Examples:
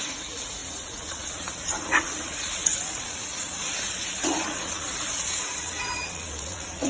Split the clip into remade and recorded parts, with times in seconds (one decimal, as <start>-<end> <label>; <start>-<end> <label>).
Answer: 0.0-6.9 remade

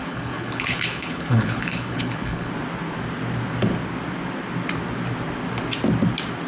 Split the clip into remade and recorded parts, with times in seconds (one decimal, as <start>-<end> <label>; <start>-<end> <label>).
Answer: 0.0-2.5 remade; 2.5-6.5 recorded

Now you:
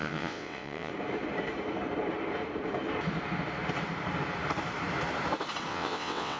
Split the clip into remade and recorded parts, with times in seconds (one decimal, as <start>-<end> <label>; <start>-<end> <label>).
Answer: 0.0-0.9 remade; 0.9-5.7 recorded; 5.7-6.4 remade

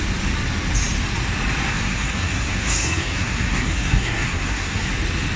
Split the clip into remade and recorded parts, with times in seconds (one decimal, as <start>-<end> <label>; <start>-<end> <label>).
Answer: 0.0-1.7 recorded; 1.7-4.9 remade; 4.9-5.4 recorded

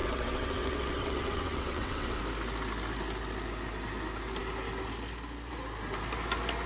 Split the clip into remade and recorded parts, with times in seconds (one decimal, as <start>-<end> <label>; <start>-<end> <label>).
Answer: 0.0-2.2 remade; 2.2-6.7 recorded

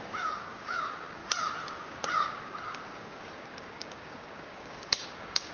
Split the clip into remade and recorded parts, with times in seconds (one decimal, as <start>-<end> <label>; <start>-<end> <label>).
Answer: 0.0-1.2 remade; 1.2-2.1 recorded; 2.1-5.5 remade

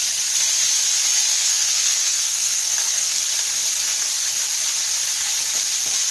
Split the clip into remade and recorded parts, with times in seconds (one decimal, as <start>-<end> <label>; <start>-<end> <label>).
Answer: 0.0-1.3 recorded; 1.3-3.2 remade; 3.2-6.1 recorded